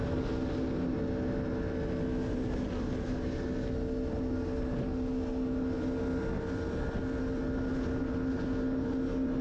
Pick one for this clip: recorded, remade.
recorded